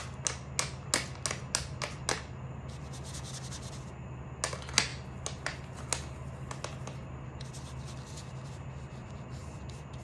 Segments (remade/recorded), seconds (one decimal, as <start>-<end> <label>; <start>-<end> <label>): 0.0-9.0 recorded; 9.0-9.6 remade; 9.6-10.0 recorded